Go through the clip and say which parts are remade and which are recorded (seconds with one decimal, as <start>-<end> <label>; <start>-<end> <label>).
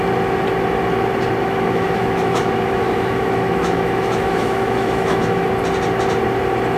0.0-1.4 recorded; 1.4-5.5 remade; 5.5-6.8 recorded